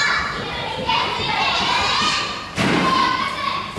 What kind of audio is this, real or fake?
fake